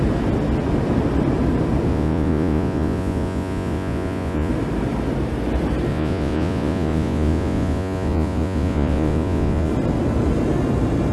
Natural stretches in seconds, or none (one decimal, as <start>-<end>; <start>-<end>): 0.0-1.9; 4.5-5.9; 9.7-11.1